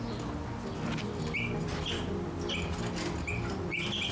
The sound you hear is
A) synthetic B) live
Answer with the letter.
B